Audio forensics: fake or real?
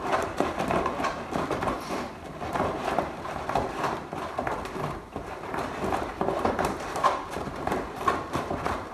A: fake